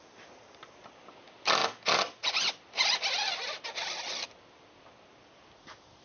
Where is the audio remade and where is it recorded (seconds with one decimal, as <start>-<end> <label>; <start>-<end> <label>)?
0.0-6.0 recorded